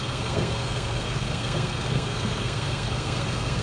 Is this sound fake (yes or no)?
yes